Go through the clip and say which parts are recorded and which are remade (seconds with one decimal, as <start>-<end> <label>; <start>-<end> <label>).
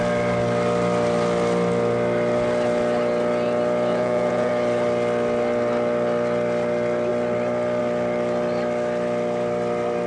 0.0-3.9 recorded; 3.9-4.5 remade; 4.5-10.1 recorded